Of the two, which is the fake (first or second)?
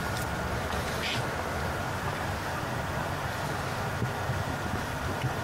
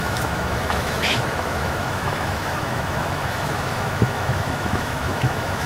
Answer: second